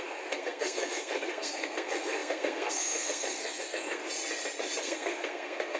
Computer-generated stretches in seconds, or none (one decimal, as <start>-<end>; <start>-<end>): 0.0-4.0; 4.8-5.8